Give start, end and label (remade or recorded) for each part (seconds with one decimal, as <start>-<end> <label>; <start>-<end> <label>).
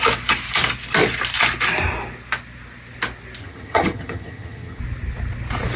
0.0-3.4 recorded; 3.4-4.8 remade; 4.8-5.8 recorded